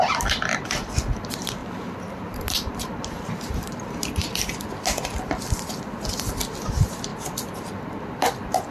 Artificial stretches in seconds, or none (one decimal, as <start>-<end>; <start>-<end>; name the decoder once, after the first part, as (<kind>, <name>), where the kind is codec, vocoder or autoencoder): 1.6-4.3 (vocoder, BigVGAN v2)